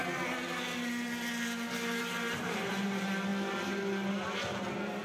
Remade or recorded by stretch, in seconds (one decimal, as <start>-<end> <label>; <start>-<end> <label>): 0.0-5.0 recorded